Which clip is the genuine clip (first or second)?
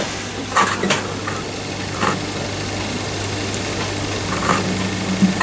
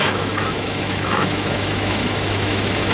first